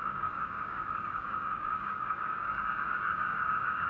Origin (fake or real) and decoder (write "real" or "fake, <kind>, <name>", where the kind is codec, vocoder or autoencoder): fake, codec, DAC